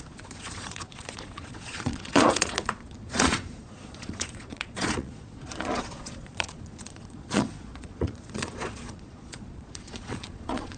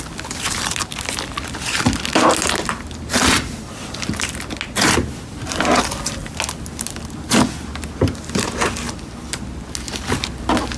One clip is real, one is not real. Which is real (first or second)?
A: second